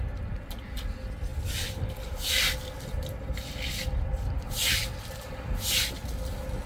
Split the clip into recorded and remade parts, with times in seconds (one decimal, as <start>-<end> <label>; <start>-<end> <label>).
0.0-6.7 recorded